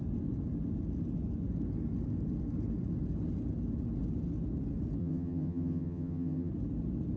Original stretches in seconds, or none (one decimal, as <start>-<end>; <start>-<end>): 0.0-5.0; 6.5-7.2